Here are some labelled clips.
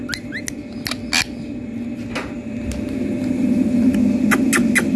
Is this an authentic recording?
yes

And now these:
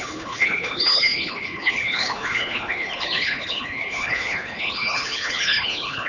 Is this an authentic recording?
no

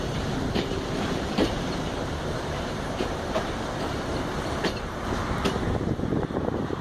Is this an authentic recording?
no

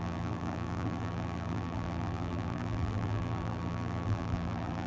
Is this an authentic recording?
no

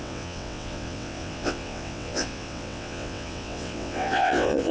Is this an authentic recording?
no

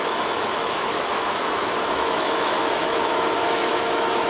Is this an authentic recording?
no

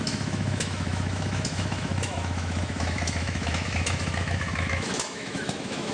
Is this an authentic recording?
no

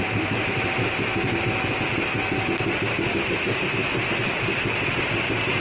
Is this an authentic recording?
yes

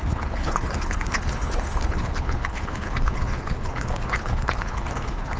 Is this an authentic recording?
no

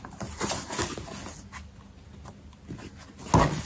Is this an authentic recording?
yes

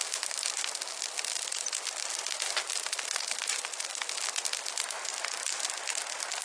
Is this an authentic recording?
yes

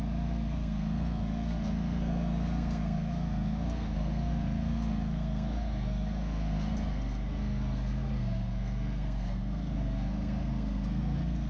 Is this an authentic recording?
no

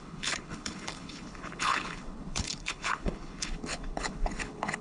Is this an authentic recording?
no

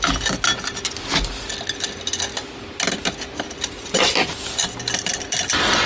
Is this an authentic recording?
yes